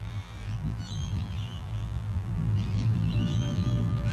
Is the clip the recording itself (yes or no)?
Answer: no